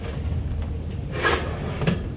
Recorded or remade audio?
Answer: recorded